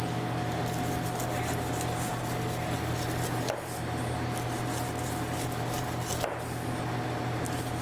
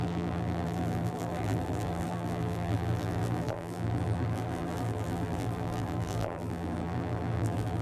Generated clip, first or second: second